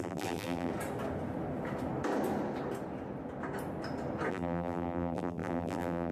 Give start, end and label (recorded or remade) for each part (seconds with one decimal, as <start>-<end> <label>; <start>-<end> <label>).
0.0-0.7 remade; 0.7-4.3 recorded; 4.3-6.1 remade